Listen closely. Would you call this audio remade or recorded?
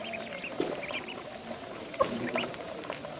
remade